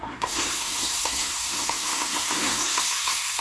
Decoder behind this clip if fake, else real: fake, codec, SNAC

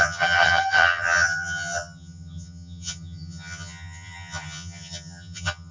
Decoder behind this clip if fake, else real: fake, vocoder, HiFi-GAN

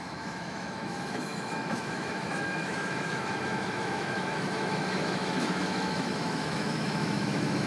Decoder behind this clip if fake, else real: fake, autoencoder, DAC-VAE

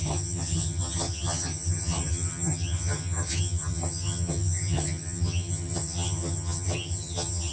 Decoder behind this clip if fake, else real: fake, vocoder, HiFi-GAN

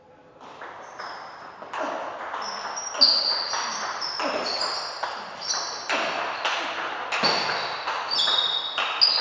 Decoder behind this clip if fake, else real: real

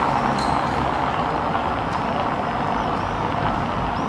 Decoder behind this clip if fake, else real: real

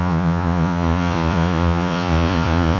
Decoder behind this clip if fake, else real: fake, vocoder, Vocos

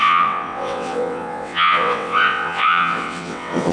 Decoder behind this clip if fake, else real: fake, vocoder, WaveNeXt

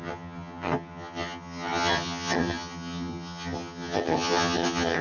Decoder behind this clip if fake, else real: fake, vocoder, HiFi-GAN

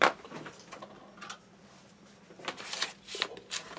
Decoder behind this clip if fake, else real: real